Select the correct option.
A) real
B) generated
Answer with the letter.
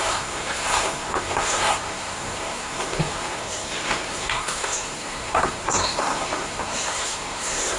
B